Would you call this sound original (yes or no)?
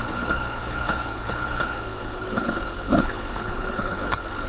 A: no